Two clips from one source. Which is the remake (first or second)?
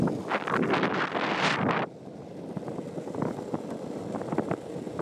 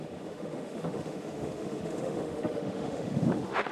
second